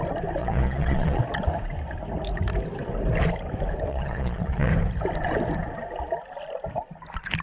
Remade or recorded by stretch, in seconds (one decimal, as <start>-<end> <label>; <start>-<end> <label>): 0.0-0.4 recorded; 0.4-1.2 remade; 1.2-3.9 recorded; 3.9-4.7 remade; 4.7-7.4 recorded